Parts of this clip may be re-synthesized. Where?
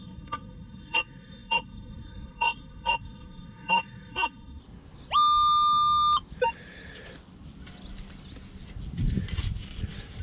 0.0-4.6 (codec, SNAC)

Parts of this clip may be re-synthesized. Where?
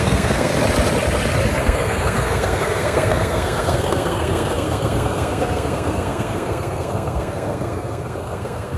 0.0-0.5 (codec, SNAC); 1.6-8.8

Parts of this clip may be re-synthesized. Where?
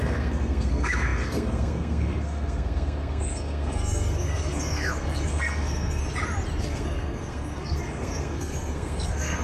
0.0-6.0 (codec, SNAC); 6.6-9.4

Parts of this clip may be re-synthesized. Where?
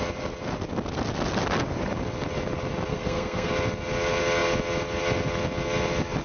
2.9-3.5 (codec, SNAC)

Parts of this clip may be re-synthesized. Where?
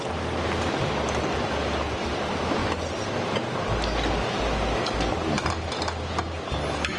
none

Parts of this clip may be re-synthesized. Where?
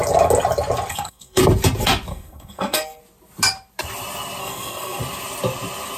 0.9-1.4 (codec, SNAC); 2.1-3.0; 4.4-5.0